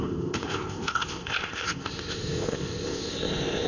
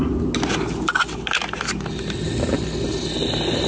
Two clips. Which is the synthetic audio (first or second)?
first